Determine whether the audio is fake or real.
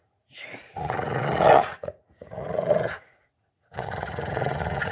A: fake